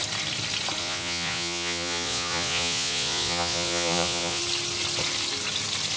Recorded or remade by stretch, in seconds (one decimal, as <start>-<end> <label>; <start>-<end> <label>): 0.0-0.8 recorded; 0.8-4.4 remade; 4.4-6.0 recorded